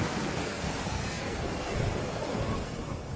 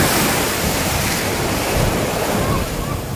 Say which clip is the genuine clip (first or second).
second